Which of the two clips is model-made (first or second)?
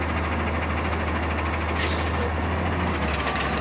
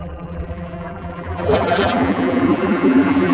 second